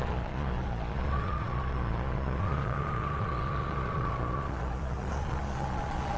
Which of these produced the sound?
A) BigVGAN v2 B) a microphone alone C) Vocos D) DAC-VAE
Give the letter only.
C